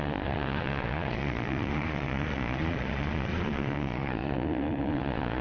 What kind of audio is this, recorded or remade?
remade